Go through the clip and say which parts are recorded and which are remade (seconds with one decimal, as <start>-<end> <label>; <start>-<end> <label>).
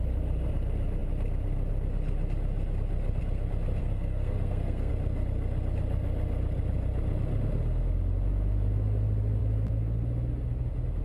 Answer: 0.0-3.8 recorded; 3.8-4.9 remade; 4.9-11.0 recorded